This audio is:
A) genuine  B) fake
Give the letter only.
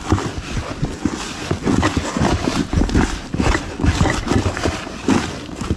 A